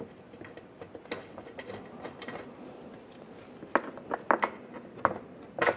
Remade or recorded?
recorded